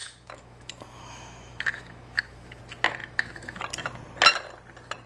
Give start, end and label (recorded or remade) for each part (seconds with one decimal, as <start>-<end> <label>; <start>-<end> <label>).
0.0-2.6 remade; 2.6-3.0 recorded; 3.0-3.6 remade; 3.6-5.1 recorded